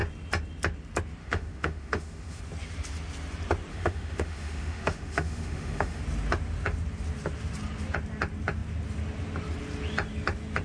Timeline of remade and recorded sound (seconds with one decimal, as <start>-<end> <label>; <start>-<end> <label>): 0.0-1.2 recorded; 1.2-2.4 remade; 2.4-3.7 recorded; 3.7-6.0 remade; 6.0-10.6 recorded